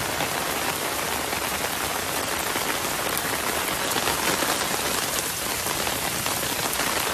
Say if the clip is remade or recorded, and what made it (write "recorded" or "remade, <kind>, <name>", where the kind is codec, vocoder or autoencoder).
remade, vocoder, BigVGAN v2